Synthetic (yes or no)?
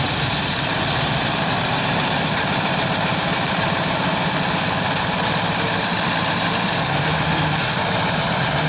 yes